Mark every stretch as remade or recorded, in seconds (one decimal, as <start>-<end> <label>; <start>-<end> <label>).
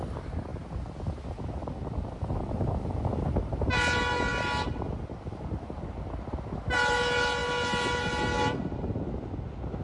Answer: 0.0-9.8 recorded